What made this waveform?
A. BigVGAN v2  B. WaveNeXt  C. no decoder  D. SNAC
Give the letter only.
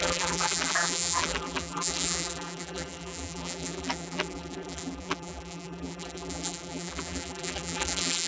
A